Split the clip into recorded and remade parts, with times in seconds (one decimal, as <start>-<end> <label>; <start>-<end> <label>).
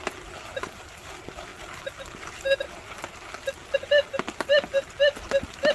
0.0-5.7 recorded